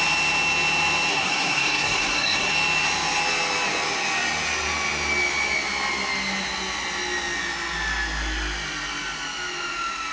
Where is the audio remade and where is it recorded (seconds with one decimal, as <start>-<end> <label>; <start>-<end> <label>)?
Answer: 0.0-1.1 recorded; 1.1-2.5 remade; 2.5-10.1 recorded